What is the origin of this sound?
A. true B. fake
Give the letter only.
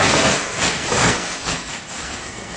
B